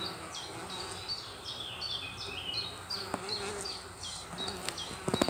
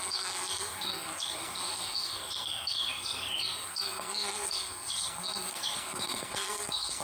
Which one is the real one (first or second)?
first